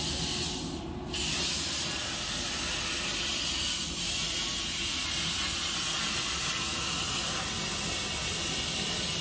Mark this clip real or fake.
real